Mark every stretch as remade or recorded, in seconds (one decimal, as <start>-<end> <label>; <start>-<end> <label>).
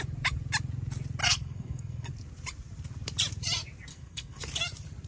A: 0.0-1.2 recorded; 1.2-2.1 remade; 2.1-3.9 recorded; 3.9-4.4 remade; 4.4-5.1 recorded